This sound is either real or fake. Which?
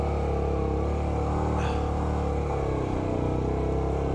real